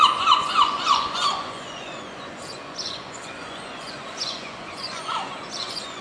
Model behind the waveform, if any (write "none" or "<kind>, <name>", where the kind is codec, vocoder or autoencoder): vocoder, Vocos